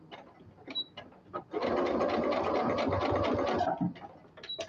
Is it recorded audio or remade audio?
recorded